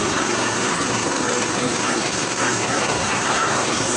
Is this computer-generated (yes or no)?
yes